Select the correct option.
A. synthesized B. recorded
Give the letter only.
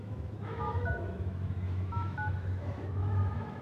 A